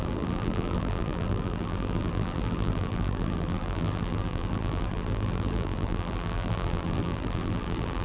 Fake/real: fake